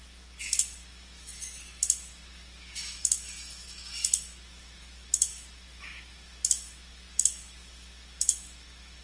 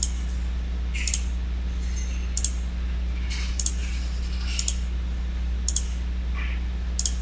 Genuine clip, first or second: second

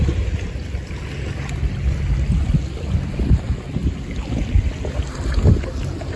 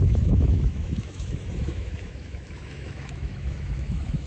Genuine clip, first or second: first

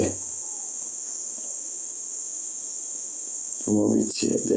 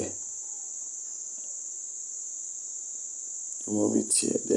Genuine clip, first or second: second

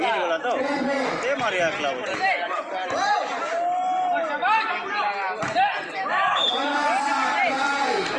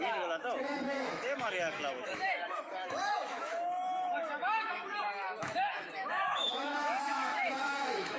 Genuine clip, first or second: first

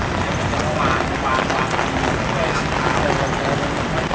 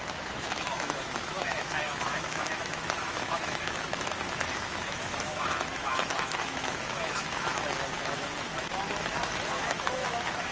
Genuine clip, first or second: first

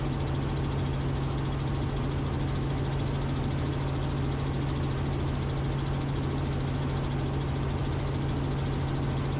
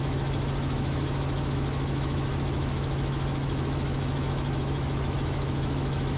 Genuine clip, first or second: first